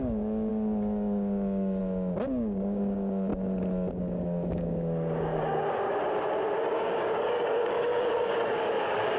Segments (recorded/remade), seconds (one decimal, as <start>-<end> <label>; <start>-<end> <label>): 0.0-3.3 remade; 3.3-3.9 recorded; 3.9-5.9 remade; 5.9-6.7 recorded; 6.7-9.2 remade